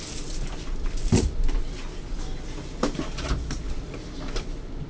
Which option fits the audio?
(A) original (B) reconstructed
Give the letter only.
A